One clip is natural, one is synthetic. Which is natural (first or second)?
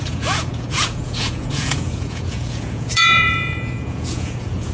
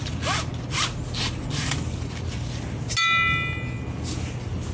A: second